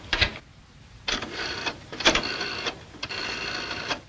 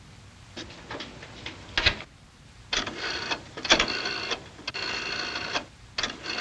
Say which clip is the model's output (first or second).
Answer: first